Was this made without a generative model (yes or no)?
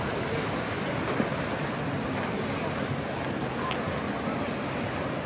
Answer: yes